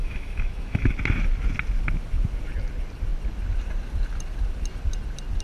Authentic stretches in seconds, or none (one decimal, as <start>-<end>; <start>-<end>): 0.9-5.4